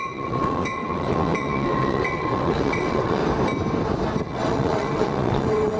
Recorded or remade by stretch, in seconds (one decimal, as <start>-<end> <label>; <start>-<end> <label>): 0.0-3.2 remade; 3.2-4.2 recorded; 4.2-5.8 remade